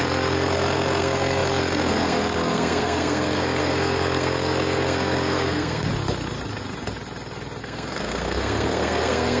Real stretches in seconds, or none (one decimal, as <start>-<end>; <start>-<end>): 5.9-7.6